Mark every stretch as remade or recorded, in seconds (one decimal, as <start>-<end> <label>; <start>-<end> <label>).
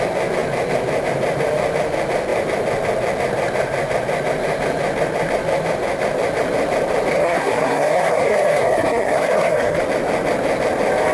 0.0-7.1 recorded; 7.1-9.8 remade; 9.8-11.1 recorded